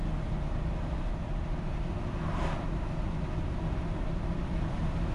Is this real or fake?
real